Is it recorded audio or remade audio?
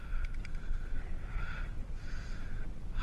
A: recorded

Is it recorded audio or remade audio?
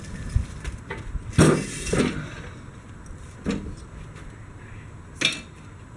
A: recorded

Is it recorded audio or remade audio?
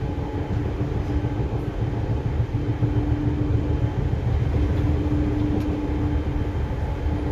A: recorded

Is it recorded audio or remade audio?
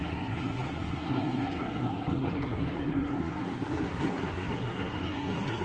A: remade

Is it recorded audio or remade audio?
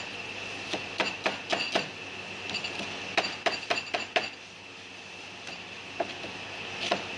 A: recorded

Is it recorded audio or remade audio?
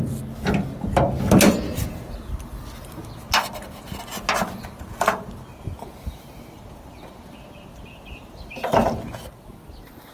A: recorded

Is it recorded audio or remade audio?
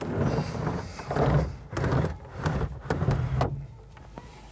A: recorded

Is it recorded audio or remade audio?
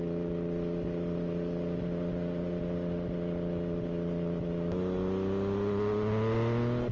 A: recorded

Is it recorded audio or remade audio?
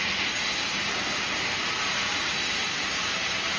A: remade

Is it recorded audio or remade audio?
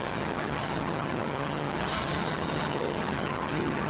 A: remade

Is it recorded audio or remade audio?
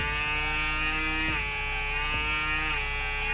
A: recorded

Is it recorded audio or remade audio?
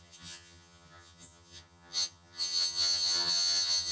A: remade